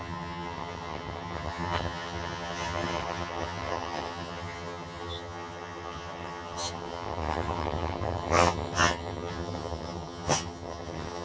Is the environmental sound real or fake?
fake